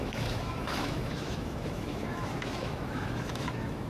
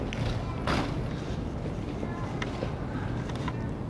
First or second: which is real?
second